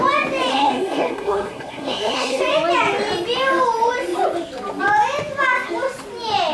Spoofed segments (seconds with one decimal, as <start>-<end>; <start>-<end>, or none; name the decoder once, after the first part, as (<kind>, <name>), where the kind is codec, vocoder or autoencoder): 0.5-2.4 (codec, SNAC)